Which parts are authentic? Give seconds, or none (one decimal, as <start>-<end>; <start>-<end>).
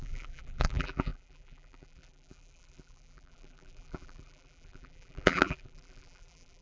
none